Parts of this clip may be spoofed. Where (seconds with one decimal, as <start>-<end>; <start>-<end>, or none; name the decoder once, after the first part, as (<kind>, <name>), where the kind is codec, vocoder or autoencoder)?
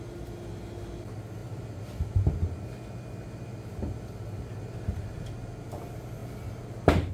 1.4-2.1 (vocoder, BigVGAN v2); 6.2-7.1